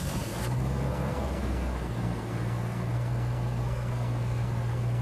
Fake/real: fake